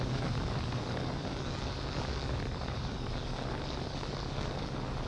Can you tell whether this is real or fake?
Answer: fake